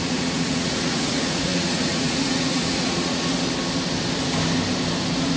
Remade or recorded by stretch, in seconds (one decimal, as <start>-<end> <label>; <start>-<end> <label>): 0.0-3.3 remade; 3.3-5.4 recorded